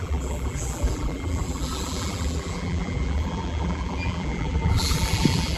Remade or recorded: remade